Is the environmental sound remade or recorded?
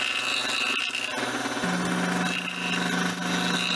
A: recorded